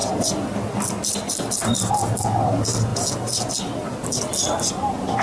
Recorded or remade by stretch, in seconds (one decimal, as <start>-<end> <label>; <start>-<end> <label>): 0.0-5.2 recorded